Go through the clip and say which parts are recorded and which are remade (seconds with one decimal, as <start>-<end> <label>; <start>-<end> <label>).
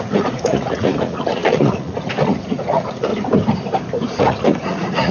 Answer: 0.0-3.1 remade; 3.1-4.2 recorded; 4.2-5.1 remade